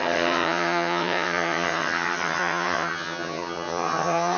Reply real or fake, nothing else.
fake